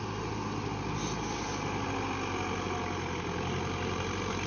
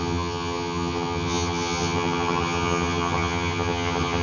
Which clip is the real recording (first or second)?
first